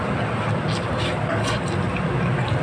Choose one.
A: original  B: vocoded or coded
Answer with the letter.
A